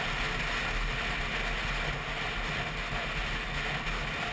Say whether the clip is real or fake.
real